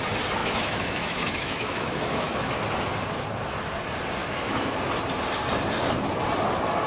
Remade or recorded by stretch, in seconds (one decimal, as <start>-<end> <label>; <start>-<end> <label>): 0.0-0.4 recorded; 0.4-2.5 remade; 2.5-4.2 recorded; 4.2-4.8 remade; 4.8-6.9 recorded

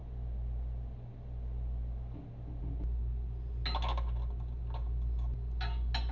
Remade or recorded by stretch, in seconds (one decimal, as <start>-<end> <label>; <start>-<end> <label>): 0.0-6.1 recorded

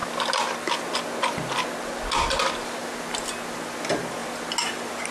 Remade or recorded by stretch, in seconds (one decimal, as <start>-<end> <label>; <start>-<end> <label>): 0.0-5.1 recorded

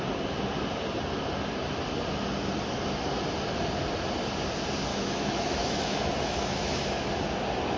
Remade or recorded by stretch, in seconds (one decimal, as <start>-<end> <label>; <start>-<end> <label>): 0.0-4.9 recorded; 4.9-7.2 remade; 7.2-7.8 recorded

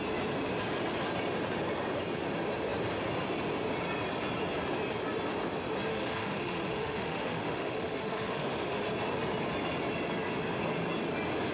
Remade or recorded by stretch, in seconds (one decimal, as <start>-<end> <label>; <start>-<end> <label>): 0.0-5.9 recorded; 5.9-8.8 remade; 8.8-11.5 recorded

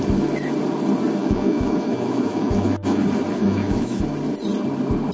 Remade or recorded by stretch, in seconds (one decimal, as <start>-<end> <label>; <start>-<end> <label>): 0.0-1.2 recorded; 1.2-3.0 remade; 3.0-3.4 recorded; 3.4-4.0 remade; 4.0-5.1 recorded

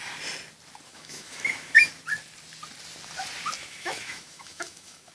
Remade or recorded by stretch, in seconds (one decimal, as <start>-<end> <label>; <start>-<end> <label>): 0.0-0.9 recorded; 0.9-1.8 remade; 1.8-3.6 recorded; 3.6-5.1 remade

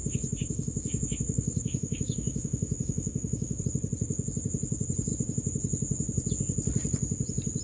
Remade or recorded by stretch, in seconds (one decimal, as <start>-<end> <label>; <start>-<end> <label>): 0.0-3.6 remade; 3.6-7.6 recorded